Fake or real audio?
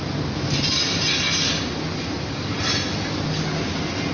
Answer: real